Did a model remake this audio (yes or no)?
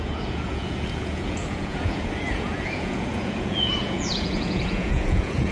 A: yes